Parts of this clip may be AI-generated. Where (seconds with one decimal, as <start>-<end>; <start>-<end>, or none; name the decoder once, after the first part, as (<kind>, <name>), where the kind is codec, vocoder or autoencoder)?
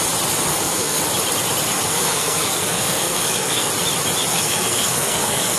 0.5-1.0 (codec, SNAC); 1.9-3.7; 4.3-5.6